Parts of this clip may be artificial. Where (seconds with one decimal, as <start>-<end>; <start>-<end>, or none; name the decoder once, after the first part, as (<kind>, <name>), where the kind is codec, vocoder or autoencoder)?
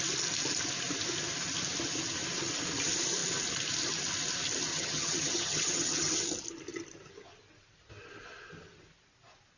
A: 4.7-6.2 (vocoder, HiFi-GAN)